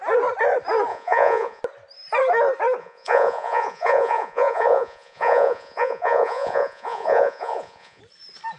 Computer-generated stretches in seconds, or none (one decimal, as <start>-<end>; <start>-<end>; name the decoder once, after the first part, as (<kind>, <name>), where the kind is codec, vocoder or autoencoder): 0.9-1.6 (vocoder, Vocos); 2.8-8.0